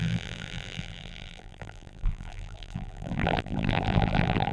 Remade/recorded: remade